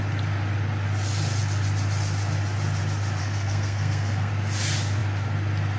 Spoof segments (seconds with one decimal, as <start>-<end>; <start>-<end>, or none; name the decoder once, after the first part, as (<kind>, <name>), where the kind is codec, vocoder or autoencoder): 3.2-4.3 (codec, SNAC)